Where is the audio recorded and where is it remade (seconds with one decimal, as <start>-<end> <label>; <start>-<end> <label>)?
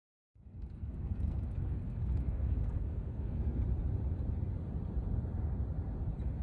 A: 0.0-3.6 remade; 3.6-6.4 recorded